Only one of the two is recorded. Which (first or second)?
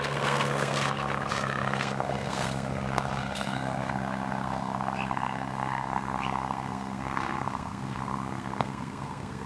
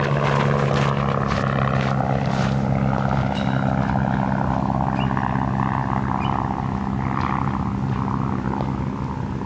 second